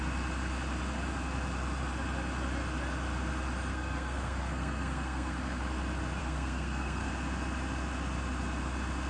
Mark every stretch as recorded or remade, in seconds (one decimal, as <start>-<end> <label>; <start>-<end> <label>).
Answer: 0.0-3.7 recorded; 3.7-5.6 remade; 5.6-6.2 recorded; 6.2-7.1 remade; 7.1-9.1 recorded